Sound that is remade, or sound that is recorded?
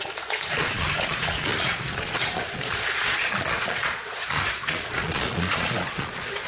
remade